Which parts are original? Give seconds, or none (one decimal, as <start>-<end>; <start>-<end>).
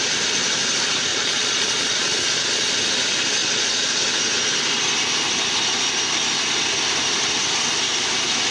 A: 0.0-1.1; 2.7-3.4; 4.0-8.5